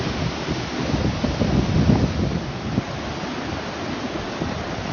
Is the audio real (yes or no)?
yes